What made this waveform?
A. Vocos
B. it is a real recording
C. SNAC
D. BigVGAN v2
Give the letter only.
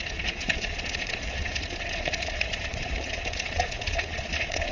A